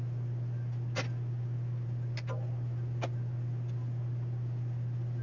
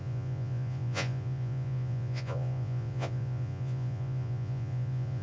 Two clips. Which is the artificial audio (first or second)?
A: second